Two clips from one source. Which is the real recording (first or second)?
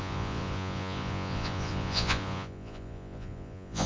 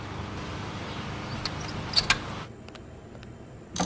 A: second